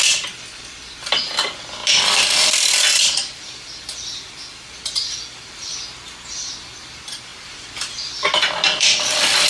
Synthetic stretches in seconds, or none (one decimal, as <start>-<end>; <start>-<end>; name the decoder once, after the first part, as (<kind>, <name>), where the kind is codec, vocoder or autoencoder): 1.8-3.5 (vocoder, BigVGAN v2); 7.3-9.5